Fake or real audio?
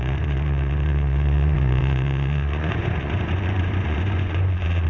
fake